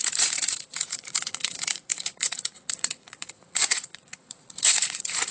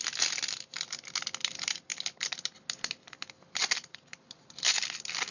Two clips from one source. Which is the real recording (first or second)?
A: second